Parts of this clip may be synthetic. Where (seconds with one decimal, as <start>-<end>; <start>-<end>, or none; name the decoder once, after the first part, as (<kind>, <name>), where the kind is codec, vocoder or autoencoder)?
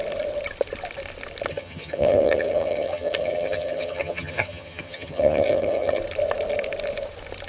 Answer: 1.5-6.0 (vocoder, HiFi-GAN)